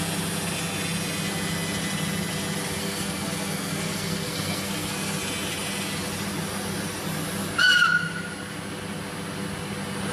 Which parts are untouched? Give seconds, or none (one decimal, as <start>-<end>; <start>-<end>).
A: 0.0-2.8; 5.2-10.1